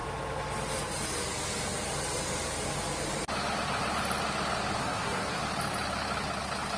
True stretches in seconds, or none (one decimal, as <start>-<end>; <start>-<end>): 0.0-4.8; 5.4-6.8